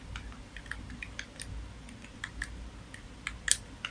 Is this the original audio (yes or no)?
yes